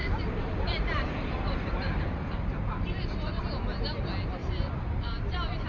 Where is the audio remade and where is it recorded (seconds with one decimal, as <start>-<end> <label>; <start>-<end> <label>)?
0.0-3.4 remade; 3.4-4.4 recorded; 4.4-5.7 remade